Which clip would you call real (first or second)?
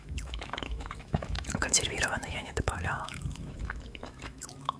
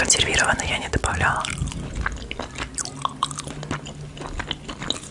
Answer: second